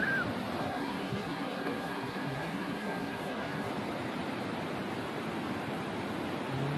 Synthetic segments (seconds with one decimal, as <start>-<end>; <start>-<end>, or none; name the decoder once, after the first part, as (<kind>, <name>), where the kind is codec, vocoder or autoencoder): 0.6-3.7 (codec, SNAC)